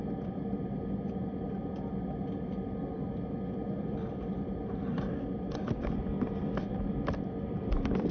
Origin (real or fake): fake